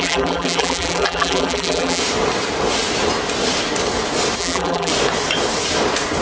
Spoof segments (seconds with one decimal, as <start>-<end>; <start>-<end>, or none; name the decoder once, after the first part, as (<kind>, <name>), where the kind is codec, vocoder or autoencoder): 0.0-2.0 (vocoder, BigVGAN v2); 4.4-4.9